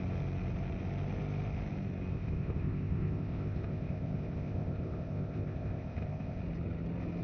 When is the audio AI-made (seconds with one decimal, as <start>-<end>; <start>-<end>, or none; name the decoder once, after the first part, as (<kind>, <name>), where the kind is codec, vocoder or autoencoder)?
2.1-6.4 (codec, ZipCodec)